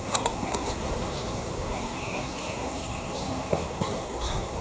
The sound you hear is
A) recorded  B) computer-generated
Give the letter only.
B